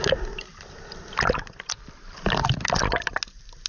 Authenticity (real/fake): real